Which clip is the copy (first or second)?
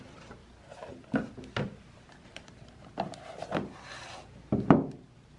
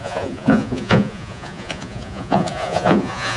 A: second